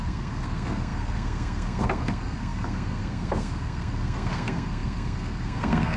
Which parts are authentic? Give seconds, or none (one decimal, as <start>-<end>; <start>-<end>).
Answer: none